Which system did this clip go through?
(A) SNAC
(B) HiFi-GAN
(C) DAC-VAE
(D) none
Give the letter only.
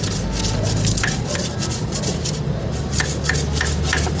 D